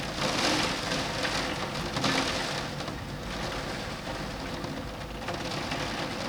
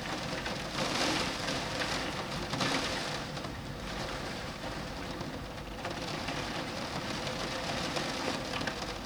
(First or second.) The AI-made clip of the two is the second